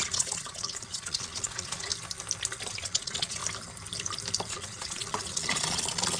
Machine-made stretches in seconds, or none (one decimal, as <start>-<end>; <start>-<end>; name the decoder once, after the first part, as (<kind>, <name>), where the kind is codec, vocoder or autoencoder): 0.0-1.9 (vocoder, Vocos); 2.7-3.4; 4.5-6.2